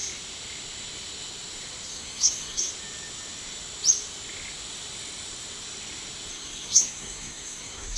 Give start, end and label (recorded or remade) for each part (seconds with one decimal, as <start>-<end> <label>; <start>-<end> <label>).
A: 0.0-1.9 recorded; 1.9-2.7 remade; 2.7-6.3 recorded; 6.3-8.0 remade